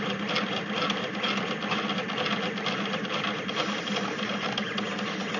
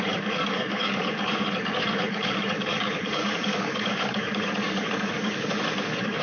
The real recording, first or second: first